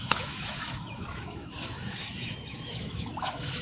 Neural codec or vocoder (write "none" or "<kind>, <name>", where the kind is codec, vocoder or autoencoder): autoencoder, DAC-VAE